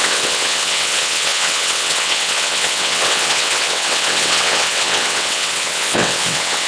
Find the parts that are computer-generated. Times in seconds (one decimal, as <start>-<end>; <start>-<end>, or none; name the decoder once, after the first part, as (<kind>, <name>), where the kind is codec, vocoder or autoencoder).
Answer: 0.0-6.7 (vocoder, WaveNeXt)